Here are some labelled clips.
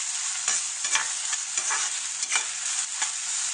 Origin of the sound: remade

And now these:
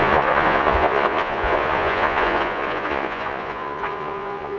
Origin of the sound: remade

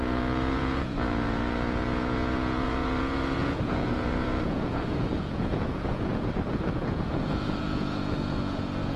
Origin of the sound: remade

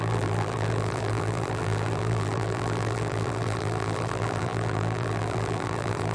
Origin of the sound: remade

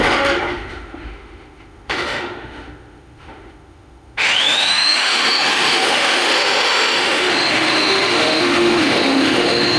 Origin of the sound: remade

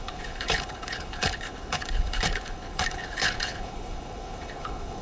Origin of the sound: remade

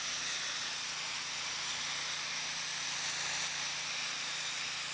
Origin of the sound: recorded